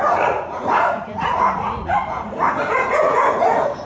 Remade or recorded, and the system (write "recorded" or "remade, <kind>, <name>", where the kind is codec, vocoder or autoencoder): remade, vocoder, Vocos